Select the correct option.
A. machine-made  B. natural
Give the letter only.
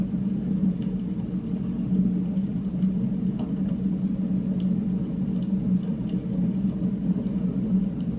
B